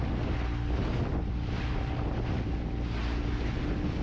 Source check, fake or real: real